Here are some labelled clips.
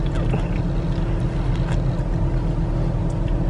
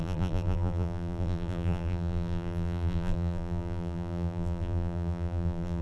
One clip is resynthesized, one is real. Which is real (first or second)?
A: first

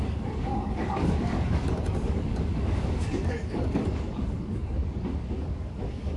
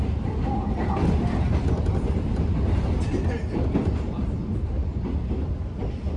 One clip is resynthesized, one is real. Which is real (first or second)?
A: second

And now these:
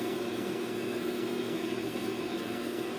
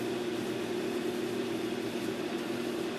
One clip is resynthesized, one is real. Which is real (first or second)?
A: second